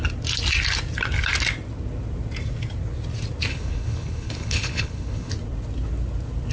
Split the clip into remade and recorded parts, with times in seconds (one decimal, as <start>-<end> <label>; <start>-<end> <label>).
0.0-3.5 recorded; 3.5-5.3 remade; 5.3-6.5 recorded